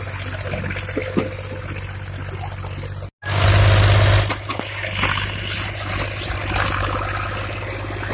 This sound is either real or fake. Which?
real